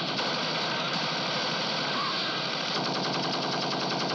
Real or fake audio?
real